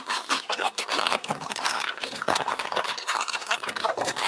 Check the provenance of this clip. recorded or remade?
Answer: remade